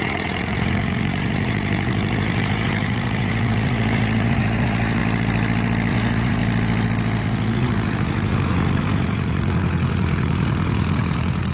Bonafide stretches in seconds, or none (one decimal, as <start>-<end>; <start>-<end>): 5.0-5.9; 6.4-7.2